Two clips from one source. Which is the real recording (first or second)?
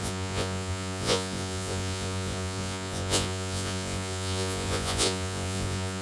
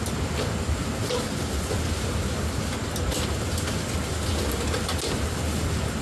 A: second